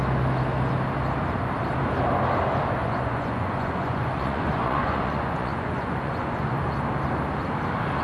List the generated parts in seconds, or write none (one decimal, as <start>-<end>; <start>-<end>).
2.8-6.6